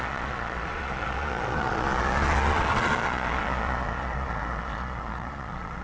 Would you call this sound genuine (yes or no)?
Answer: no